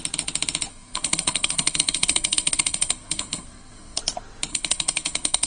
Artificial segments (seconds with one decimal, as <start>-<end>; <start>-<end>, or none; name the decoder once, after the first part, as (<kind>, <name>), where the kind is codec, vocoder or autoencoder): 0.7-4.0 (codec, SNAC); 4.5-5.5